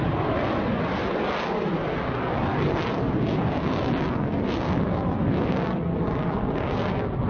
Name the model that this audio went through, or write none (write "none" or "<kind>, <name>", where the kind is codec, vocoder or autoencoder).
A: none